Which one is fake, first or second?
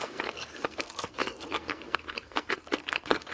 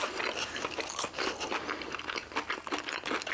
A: first